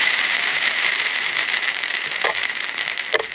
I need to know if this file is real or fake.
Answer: fake